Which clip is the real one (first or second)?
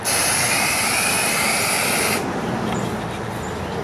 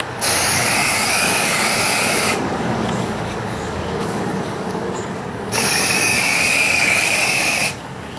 first